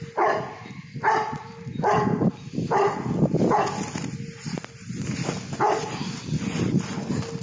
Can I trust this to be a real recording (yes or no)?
yes